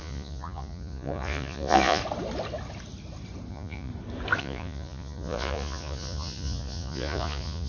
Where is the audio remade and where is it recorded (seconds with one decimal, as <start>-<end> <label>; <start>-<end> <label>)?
0.0-2.0 remade; 2.0-3.5 recorded; 3.5-3.9 remade; 3.9-4.4 recorded; 4.4-7.7 remade